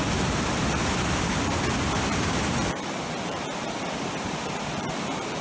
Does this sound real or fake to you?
fake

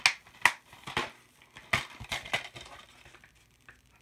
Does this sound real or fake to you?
real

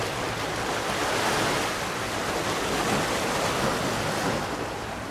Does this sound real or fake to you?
real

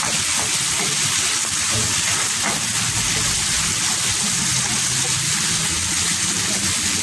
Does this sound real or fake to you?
real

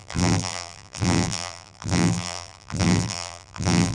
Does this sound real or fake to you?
fake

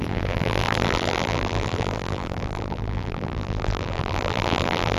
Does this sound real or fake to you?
fake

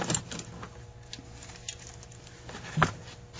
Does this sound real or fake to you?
real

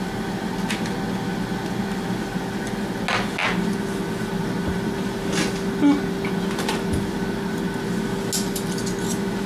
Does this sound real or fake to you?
real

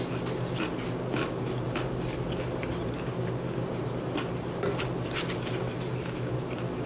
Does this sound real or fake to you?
real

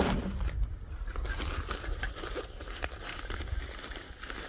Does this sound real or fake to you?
real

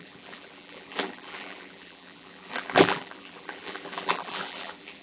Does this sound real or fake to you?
fake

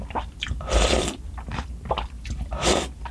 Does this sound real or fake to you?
fake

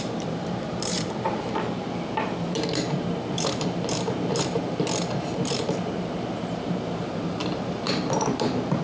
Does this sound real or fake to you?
fake